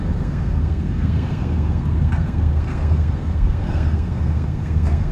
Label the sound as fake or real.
fake